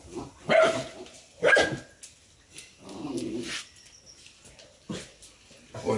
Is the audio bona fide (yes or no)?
yes